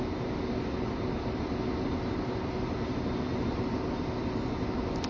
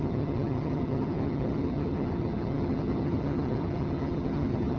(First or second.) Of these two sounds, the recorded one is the first